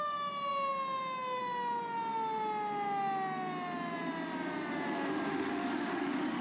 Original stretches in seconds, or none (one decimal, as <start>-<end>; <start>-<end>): 0.0-5.3